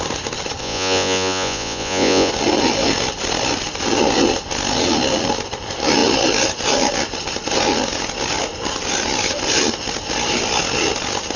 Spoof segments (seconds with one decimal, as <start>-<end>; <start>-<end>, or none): 0.6-2.3